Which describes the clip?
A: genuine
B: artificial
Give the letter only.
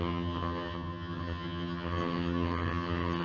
B